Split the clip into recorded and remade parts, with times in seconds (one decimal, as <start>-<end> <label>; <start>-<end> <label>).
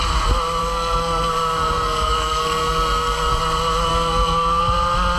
0.0-0.6 recorded; 0.6-3.4 remade; 3.4-3.9 recorded; 3.9-4.6 remade; 4.6-5.2 recorded